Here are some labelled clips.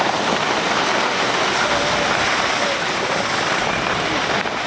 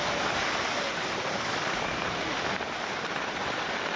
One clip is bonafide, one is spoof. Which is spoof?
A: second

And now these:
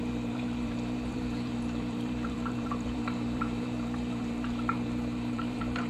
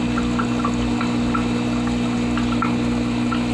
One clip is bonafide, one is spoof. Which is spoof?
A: first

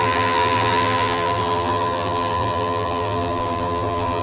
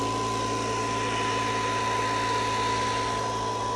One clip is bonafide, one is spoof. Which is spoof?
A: first